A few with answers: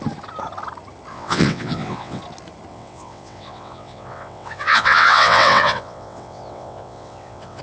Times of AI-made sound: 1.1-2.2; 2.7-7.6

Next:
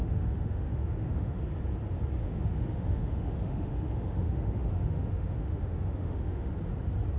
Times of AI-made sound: 0.0-1.4; 2.2-6.5